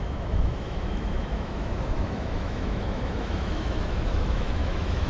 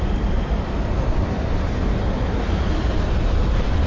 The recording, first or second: second